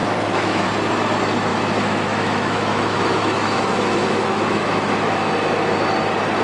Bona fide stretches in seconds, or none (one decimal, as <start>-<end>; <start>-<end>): 0.7-1.5; 5.3-6.4